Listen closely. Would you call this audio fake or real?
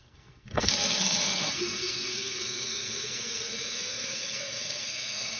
fake